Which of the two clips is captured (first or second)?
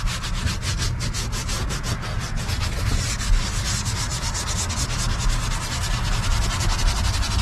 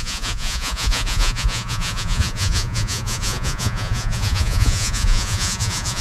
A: first